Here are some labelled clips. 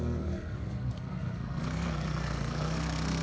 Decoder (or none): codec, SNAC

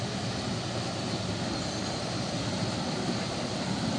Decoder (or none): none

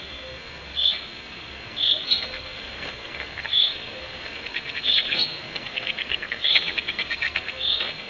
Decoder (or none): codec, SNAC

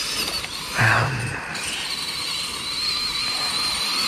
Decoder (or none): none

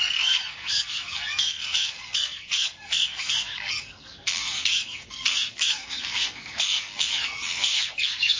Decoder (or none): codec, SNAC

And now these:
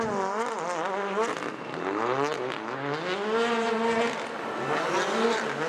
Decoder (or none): none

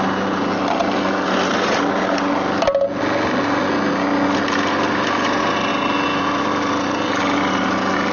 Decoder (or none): none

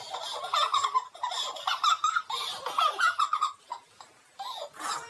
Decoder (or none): none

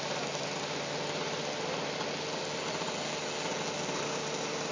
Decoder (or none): none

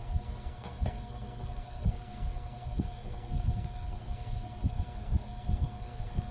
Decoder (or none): codec, SNAC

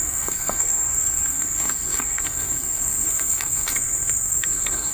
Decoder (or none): codec, SNAC